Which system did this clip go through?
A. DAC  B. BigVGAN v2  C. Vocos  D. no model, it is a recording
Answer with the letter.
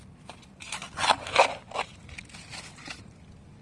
D